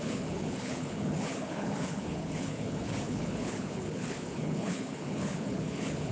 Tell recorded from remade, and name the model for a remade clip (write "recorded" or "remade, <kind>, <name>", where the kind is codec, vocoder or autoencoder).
remade, codec, HILCodec